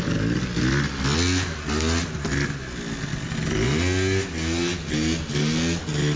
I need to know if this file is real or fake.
real